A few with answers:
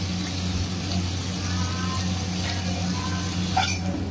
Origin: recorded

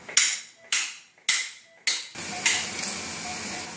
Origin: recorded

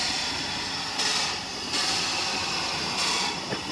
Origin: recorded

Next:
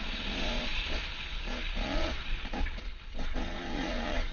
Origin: remade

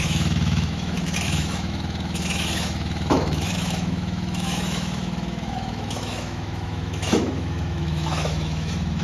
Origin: remade